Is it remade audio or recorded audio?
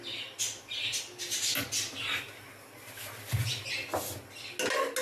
recorded